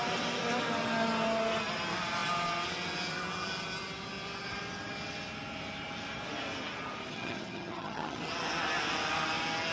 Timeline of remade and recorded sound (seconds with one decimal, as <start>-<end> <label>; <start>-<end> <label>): 0.0-7.1 recorded; 7.1-8.2 remade; 8.2-9.7 recorded